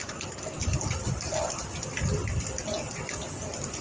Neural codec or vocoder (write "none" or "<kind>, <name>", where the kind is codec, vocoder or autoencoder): none